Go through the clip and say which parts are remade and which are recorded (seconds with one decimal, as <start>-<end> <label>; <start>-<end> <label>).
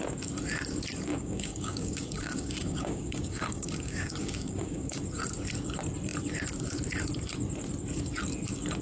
0.0-1.1 recorded; 1.1-5.0 remade; 5.0-8.8 recorded